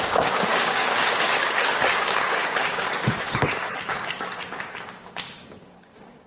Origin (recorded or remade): remade